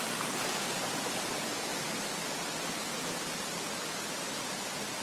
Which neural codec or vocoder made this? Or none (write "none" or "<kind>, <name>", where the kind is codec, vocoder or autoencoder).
none